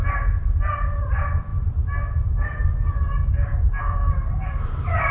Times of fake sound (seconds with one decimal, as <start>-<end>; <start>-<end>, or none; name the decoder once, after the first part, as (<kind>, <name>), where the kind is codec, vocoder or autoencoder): none